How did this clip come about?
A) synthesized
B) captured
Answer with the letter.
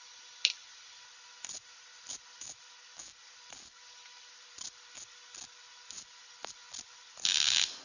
B